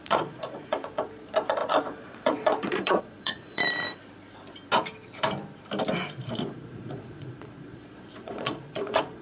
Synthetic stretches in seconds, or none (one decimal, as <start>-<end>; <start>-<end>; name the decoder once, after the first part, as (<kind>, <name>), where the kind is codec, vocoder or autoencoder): 0.0-3.6 (vocoder, Vocos); 6.3-9.2